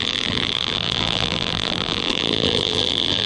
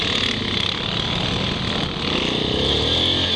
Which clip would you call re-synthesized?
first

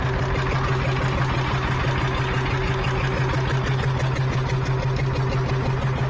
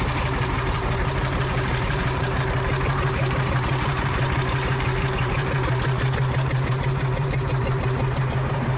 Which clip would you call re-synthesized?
second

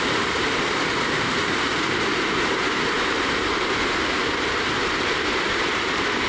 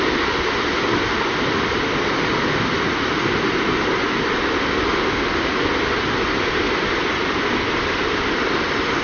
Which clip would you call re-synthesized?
first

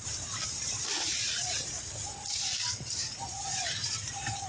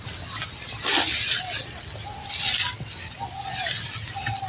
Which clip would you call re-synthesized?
first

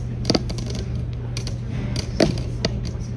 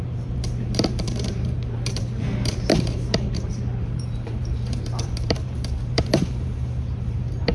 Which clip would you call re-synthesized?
second